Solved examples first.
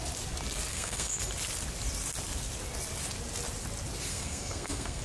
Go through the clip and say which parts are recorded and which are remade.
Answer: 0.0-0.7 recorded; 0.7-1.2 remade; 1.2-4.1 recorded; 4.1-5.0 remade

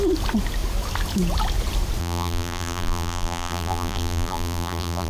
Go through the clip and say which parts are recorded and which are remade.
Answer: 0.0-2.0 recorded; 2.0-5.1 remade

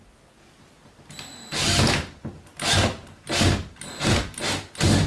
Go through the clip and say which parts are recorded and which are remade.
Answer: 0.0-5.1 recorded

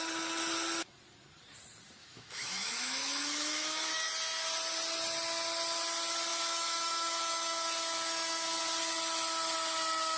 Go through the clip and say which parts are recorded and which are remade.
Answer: 0.0-2.0 recorded; 2.0-3.9 remade; 3.9-6.3 recorded; 6.3-8.6 remade; 8.6-10.2 recorded

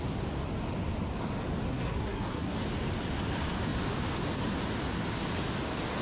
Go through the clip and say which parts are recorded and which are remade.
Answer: 0.0-1.7 recorded; 1.7-2.6 remade; 2.6-6.0 recorded

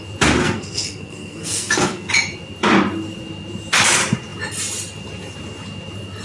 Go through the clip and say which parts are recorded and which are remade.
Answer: 0.0-0.4 recorded; 0.4-2.1 remade; 2.1-6.2 recorded

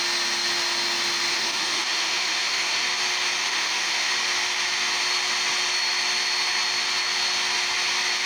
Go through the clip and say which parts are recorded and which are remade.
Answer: 0.0-1.3 recorded; 1.3-2.8 remade; 2.8-3.4 recorded; 3.4-4.1 remade; 4.1-8.3 recorded

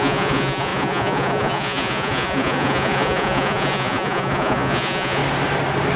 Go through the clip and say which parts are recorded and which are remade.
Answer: 0.0-5.2 remade; 5.2-6.0 recorded